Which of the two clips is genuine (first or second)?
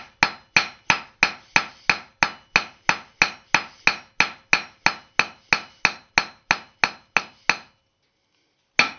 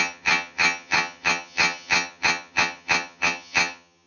first